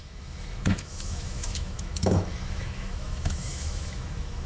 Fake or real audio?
fake